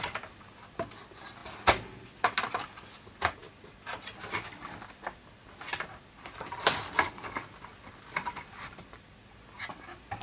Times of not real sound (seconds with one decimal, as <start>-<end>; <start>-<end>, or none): none